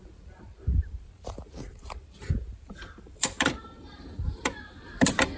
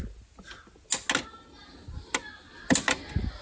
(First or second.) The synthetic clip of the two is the first